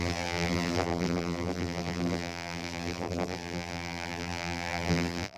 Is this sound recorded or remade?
remade